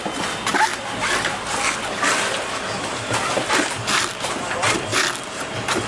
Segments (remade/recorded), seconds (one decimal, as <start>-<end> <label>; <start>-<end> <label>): 0.0-5.9 recorded